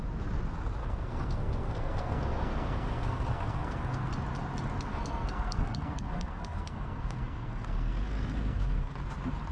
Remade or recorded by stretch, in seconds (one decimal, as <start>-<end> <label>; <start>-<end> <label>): 0.0-0.8 recorded; 0.8-4.1 remade; 4.1-4.9 recorded; 4.9-9.0 remade; 9.0-9.5 recorded